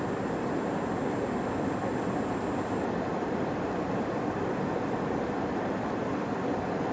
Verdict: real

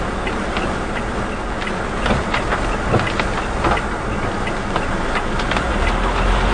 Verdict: real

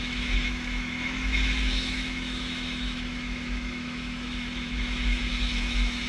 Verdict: fake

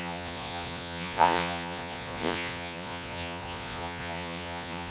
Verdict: fake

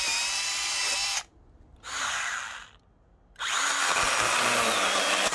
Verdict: real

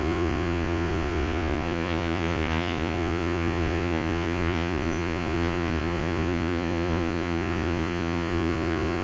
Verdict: fake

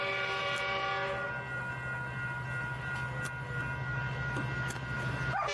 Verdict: real